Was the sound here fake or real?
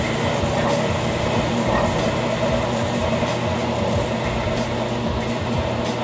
real